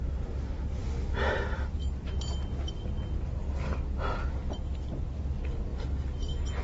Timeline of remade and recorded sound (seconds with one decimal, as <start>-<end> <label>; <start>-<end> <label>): 0.0-6.6 recorded